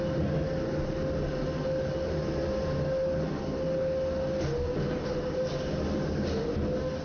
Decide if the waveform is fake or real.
real